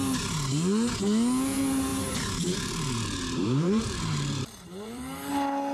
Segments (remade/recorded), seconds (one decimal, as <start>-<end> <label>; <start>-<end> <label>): 0.0-1.9 recorded; 1.9-5.3 remade; 5.3-5.7 recorded